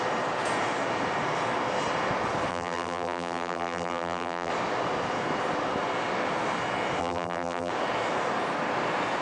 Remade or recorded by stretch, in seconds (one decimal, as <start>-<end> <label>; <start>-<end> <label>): 0.0-2.5 recorded; 2.5-4.5 remade; 4.5-7.0 recorded; 7.0-7.7 remade; 7.7-9.2 recorded